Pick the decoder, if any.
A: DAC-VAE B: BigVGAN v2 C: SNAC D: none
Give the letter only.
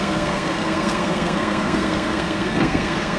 C